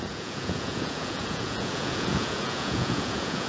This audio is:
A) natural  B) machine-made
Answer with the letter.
B